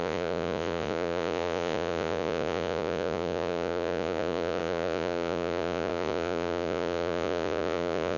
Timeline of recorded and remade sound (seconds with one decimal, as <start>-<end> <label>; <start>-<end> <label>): 0.0-8.2 remade